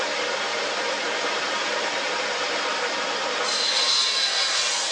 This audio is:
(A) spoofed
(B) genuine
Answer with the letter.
A